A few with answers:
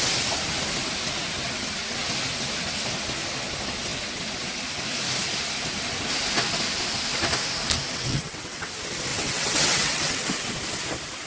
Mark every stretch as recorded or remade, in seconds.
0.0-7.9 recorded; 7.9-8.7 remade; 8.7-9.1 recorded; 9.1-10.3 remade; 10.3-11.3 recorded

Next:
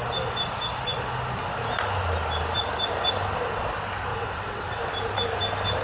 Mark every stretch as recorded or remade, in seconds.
0.0-4.1 recorded; 4.1-4.9 remade; 4.9-5.8 recorded

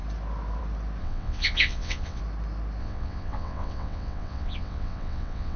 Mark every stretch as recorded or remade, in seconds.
0.0-1.0 recorded; 1.0-2.2 remade; 2.2-2.8 recorded; 2.8-5.6 remade

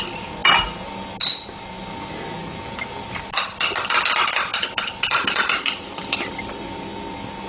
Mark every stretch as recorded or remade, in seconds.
0.0-7.5 recorded

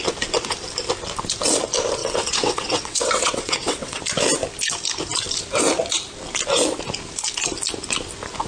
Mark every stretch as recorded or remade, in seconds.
0.0-2.0 recorded; 2.0-4.0 remade; 4.0-8.5 recorded

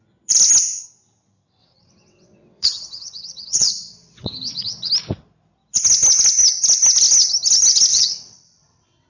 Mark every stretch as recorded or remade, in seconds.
0.0-1.6 recorded; 1.6-4.9 remade; 4.9-7.9 recorded; 7.9-9.1 remade

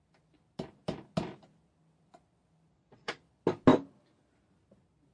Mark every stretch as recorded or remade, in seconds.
0.0-2.7 recorded; 2.7-3.2 remade; 3.2-5.1 recorded